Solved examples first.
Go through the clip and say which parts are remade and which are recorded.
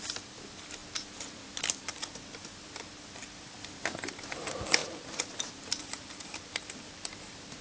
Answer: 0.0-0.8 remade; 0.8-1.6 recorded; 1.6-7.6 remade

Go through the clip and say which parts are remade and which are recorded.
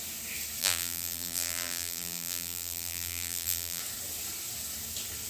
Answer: 0.0-0.6 recorded; 0.6-3.8 remade; 3.8-5.3 recorded